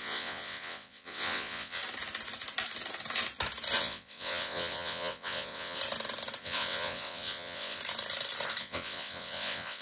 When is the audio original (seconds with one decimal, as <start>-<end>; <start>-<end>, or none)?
1.8-3.8; 5.8-6.4; 7.8-8.6